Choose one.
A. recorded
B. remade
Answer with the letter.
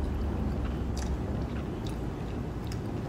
A